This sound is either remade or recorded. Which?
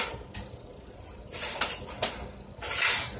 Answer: recorded